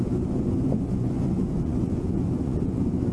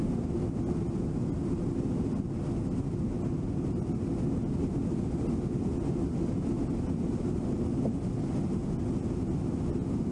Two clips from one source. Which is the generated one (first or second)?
first